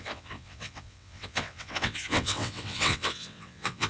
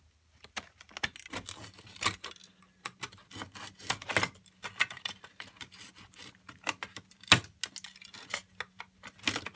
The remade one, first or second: first